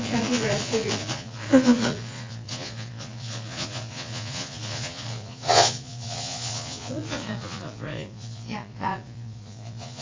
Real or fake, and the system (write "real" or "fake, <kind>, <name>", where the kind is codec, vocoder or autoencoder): fake, vocoder, Vocos